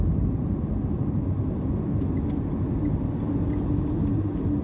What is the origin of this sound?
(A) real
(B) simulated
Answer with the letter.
A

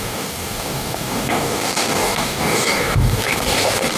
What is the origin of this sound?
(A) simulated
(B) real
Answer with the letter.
A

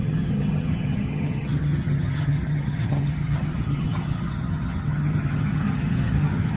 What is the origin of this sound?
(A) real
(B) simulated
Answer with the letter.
B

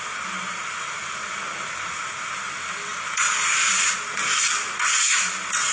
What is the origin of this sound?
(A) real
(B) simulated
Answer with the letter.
A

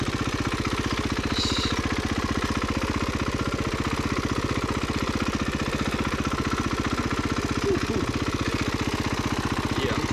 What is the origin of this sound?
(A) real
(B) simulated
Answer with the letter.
A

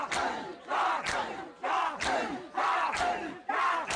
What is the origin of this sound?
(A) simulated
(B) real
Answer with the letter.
A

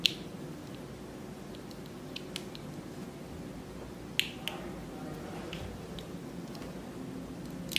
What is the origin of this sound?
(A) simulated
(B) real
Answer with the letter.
B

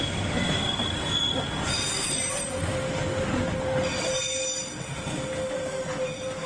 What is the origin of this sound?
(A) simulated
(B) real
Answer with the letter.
B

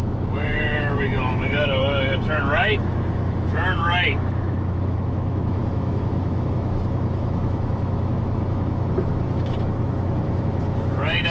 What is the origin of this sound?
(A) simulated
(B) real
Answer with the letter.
A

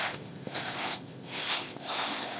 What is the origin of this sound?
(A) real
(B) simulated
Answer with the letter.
B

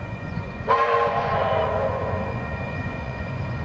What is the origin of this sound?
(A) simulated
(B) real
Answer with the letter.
A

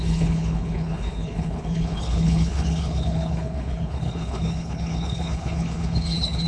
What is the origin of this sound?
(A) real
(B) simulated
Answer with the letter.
B